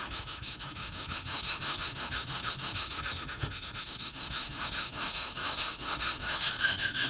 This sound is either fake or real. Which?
fake